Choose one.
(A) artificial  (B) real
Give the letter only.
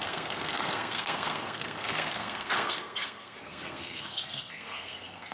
A